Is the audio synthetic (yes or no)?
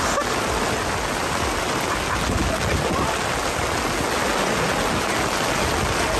no